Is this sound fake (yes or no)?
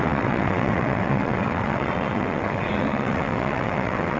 yes